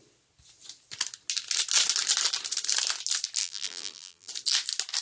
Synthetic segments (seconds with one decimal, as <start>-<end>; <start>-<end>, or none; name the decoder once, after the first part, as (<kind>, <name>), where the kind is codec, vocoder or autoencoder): 3.4-4.3 (vocoder, BigVGAN v2)